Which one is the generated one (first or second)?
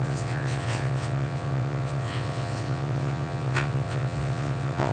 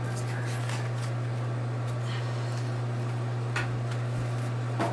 first